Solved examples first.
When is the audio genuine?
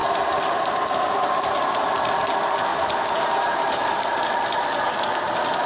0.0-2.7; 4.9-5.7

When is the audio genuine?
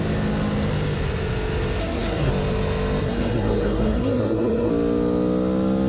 0.0-1.8; 2.3-3.0; 4.7-5.9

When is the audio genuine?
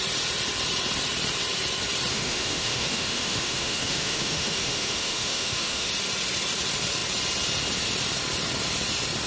0.0-2.1; 5.9-9.3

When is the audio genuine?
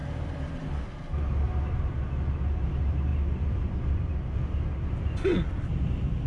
0.8-6.3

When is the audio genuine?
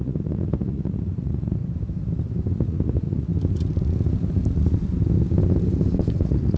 1.6-2.5; 3.3-6.1